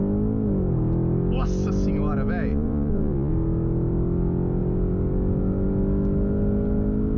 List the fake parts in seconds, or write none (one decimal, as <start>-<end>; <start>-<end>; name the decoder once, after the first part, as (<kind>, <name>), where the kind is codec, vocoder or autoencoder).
2.5-3.3 (vocoder, Vocos)

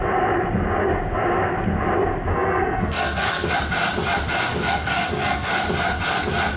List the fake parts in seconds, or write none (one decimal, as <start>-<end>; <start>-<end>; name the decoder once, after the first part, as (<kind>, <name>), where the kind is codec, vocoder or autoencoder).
2.3-3.5 (codec, SNAC); 4.5-5.5

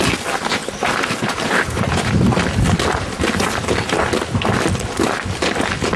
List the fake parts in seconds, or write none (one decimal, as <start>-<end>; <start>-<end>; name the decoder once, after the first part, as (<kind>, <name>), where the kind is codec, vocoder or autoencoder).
0.6-2.1 (vocoder, BigVGAN v2)

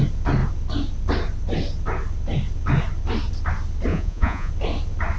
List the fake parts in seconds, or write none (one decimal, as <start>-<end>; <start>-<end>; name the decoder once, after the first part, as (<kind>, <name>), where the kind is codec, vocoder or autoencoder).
3.9-4.5 (vocoder, Vocos)

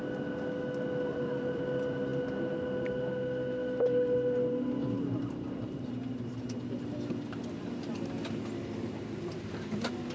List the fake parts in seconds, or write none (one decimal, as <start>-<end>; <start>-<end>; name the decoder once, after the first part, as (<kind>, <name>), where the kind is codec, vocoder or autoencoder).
1.1-1.6 (vocoder, BigVGAN v2); 4.8-7.9

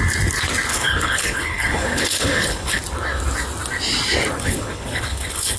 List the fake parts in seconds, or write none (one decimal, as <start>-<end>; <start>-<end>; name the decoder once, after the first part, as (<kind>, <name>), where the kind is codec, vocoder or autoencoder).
0.7-2.8 (codec, HILCodec); 4.4-5.6